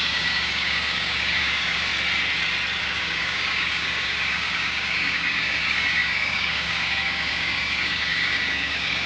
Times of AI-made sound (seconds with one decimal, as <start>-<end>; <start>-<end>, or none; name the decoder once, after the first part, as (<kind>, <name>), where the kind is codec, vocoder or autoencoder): 0.0-1.9 (codec, DAC); 2.8-9.1